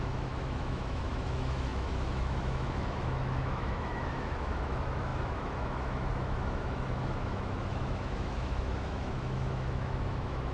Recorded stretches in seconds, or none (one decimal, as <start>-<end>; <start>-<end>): none